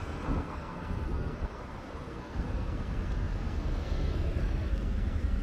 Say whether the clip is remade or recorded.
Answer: remade